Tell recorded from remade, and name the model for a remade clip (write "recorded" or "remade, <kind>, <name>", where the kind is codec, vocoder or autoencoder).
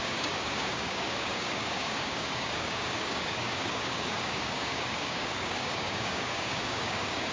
remade, codec, DAC